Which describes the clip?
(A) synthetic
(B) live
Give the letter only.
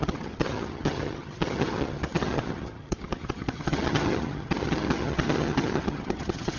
A